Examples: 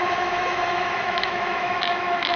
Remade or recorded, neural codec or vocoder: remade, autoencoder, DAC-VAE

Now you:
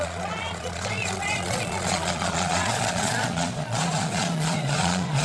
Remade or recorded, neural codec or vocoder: remade, vocoder, Vocos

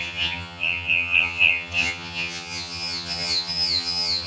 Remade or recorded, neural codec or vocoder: remade, vocoder, HiFi-GAN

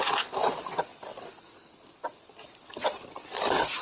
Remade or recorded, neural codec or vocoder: recorded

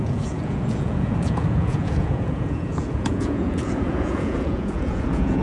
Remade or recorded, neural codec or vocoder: remade, vocoder, Vocos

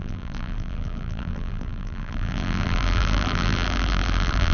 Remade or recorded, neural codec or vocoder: remade, vocoder, BigVGAN v2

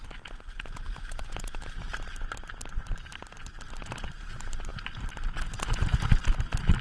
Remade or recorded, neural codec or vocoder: recorded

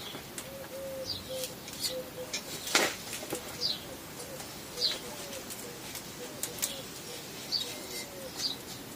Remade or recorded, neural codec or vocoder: recorded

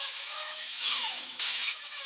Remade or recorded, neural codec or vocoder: remade, autoencoder, DAC-VAE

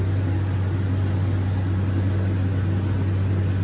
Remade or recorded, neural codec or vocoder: recorded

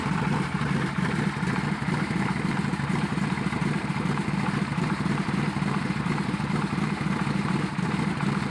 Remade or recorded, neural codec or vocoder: remade, vocoder, BigVGAN v2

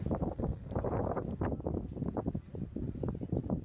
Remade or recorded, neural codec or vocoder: recorded